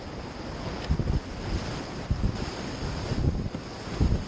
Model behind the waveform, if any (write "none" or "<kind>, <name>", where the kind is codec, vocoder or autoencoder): none